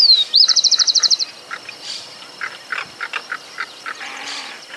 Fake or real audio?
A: real